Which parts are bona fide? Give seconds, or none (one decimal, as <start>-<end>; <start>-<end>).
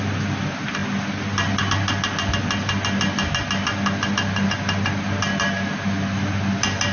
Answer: 0.0-6.9